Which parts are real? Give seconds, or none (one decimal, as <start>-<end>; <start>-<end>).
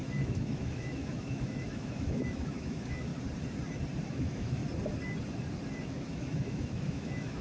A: 3.1-4.1; 4.6-5.8